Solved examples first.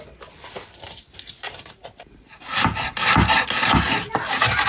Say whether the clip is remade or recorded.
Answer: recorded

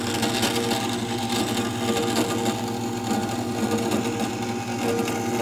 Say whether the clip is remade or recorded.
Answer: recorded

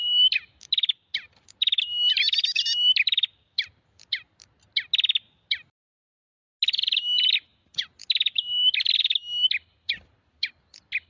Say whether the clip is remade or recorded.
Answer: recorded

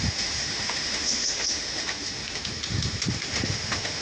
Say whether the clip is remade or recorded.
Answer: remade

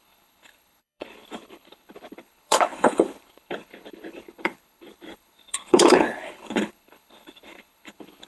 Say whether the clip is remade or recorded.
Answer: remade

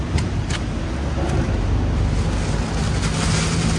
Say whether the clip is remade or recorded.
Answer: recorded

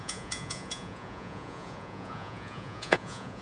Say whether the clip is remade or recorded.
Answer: remade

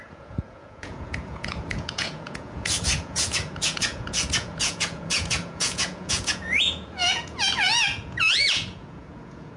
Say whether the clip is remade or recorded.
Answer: remade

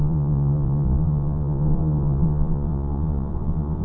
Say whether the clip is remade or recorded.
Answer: remade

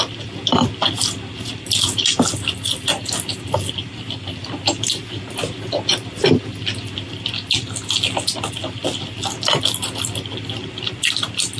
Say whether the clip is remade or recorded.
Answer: recorded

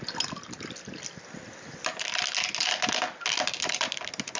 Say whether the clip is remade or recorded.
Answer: recorded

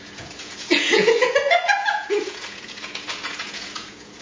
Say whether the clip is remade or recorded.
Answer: remade